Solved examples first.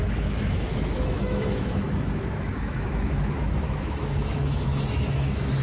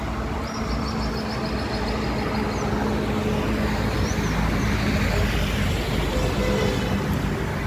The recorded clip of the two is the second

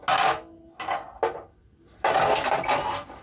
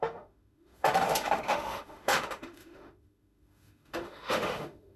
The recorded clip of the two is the first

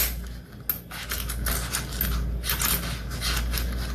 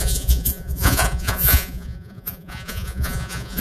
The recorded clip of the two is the first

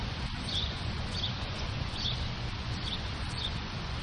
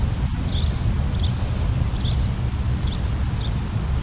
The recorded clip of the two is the second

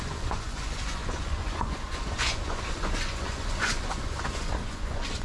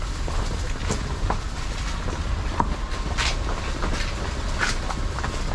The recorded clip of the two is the second